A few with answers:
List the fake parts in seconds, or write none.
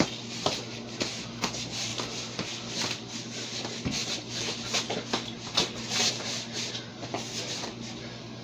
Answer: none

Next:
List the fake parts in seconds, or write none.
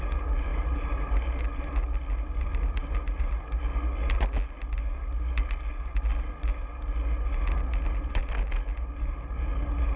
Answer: none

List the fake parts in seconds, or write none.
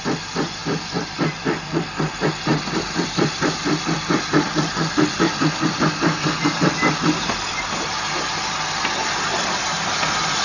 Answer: 0.6-1.3 (vocoder, BigVGAN v2); 2.5-5.4; 9.0-10.4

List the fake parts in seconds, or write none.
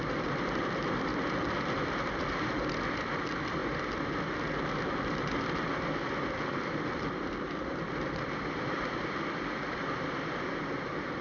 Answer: 0.0-3.6 (vocoder, BigVGAN v2); 6.5-11.2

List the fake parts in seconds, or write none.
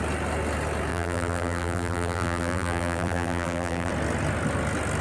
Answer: 0.9-3.9 (vocoder, BigVGAN v2)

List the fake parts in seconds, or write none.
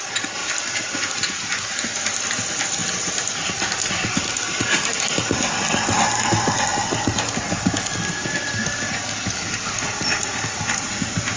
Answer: 0.4-1.1 (vocoder, BigVGAN v2); 2.8-3.7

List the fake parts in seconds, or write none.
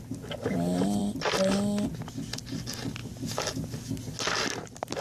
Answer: none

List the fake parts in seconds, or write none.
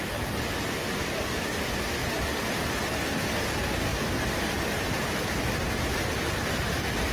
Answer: none